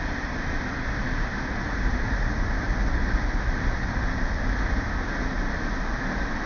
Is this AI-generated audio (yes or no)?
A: no